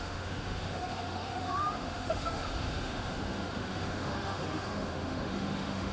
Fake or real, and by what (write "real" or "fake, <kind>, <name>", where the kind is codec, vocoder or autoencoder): fake, autoencoder, DAC-VAE